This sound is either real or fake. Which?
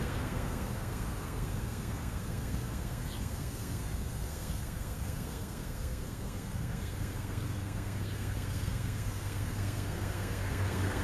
fake